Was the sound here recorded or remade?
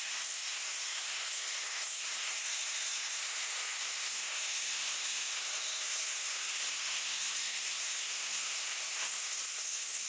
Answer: remade